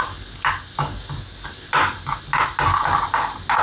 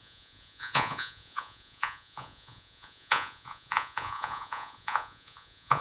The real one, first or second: first